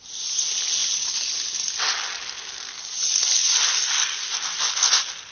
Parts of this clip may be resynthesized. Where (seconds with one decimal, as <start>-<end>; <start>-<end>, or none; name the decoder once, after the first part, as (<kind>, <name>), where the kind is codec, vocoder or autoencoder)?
none